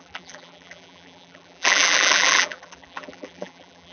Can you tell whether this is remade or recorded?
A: remade